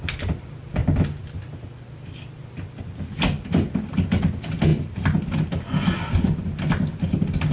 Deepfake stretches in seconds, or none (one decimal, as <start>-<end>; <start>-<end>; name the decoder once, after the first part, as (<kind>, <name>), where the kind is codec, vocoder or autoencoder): none